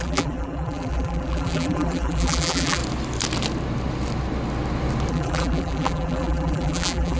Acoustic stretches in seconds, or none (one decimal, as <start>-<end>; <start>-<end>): 2.8-5.1

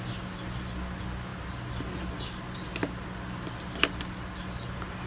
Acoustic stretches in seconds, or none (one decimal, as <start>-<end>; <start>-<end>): 0.0-2.8; 4.0-5.1

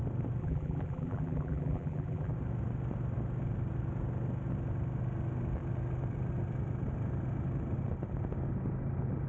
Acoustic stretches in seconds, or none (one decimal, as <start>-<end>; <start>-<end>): 0.0-0.4; 2.3-9.3

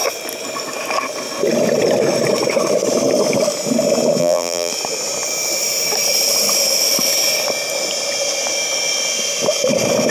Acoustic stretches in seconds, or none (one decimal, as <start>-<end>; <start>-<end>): 0.0-4.2; 4.7-10.1